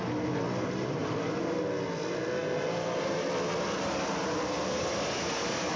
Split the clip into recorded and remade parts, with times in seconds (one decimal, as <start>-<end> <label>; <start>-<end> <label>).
0.0-1.0 recorded; 1.0-1.6 remade; 1.6-2.4 recorded; 2.4-4.1 remade; 4.1-5.8 recorded